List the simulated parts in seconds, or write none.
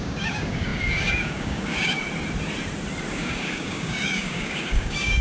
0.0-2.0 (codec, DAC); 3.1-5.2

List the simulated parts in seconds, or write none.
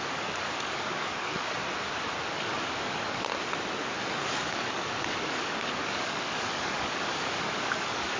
0.0-1.6 (codec, DAC); 2.3-3.3; 4.0-8.2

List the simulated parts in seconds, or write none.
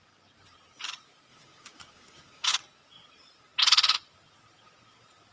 1.3-2.5 (codec, DAC)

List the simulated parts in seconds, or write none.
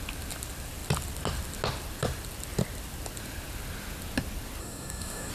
4.6-5.3 (codec, DAC)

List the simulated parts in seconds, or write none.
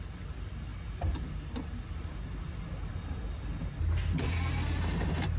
none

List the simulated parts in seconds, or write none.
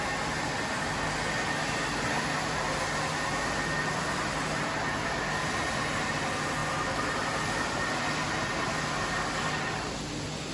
none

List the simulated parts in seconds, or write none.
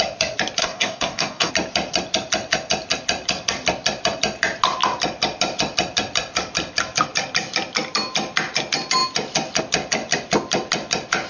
0.6-1.5 (codec, DAC)